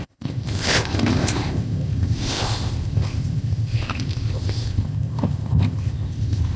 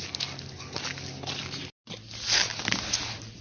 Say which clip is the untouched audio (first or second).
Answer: second